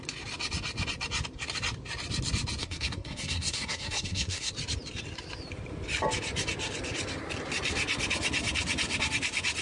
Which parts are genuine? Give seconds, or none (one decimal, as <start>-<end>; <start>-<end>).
0.0-2.6; 4.5-9.6